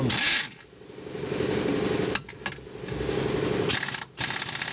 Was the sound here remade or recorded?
recorded